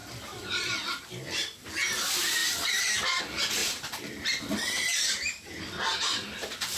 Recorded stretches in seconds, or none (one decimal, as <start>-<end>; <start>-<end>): 1.1-2.4; 3.2-3.6; 6.0-6.8